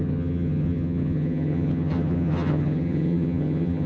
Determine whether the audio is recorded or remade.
remade